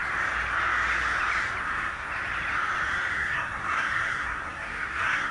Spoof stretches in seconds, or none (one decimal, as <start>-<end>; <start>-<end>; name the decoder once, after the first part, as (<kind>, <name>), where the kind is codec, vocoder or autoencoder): 1.6-2.1 (codec, SNAC); 3.1-5.3